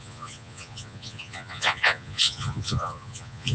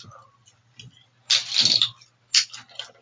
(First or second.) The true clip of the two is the second